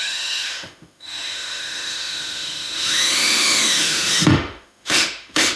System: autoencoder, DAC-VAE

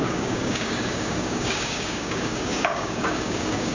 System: codec, DAC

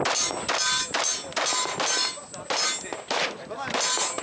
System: none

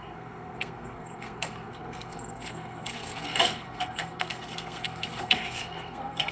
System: codec, SNAC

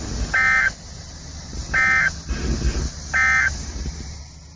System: none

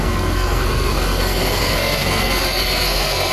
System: codec, SNAC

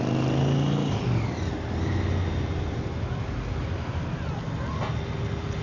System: none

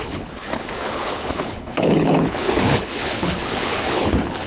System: codec, HILCodec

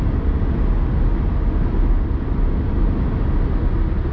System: none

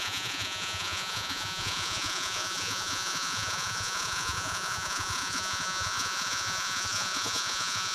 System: vocoder, Vocos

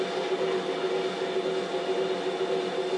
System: none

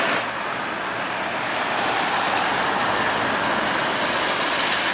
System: none